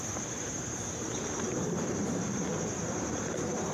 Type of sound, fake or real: fake